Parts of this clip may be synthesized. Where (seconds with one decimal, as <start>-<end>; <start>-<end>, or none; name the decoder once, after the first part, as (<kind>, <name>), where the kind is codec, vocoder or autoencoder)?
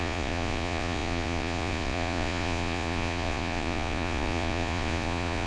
0.0-5.5 (vocoder, Vocos)